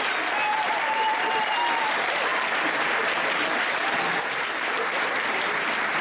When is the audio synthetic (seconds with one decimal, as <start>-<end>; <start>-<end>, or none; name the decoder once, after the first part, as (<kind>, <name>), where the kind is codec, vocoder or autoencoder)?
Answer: 0.4-1.3 (vocoder, BigVGAN v2); 2.3-6.0